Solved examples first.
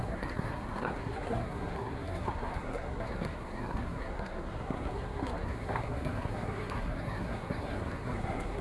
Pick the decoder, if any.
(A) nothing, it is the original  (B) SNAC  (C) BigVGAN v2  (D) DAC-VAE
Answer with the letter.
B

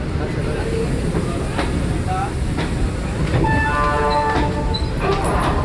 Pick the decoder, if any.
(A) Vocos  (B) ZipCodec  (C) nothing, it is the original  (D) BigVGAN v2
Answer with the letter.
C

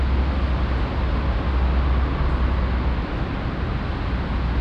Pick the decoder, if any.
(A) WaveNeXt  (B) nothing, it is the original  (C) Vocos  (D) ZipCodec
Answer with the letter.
B